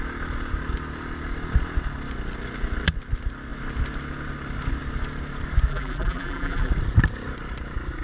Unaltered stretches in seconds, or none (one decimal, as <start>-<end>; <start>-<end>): 0.0-5.7; 6.7-8.0